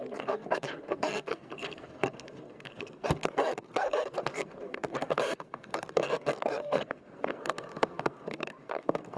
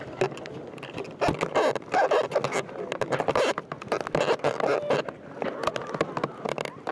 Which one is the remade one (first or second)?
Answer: first